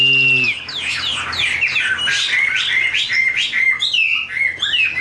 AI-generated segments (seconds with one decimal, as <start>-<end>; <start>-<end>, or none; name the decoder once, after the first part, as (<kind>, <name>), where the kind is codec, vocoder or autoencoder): none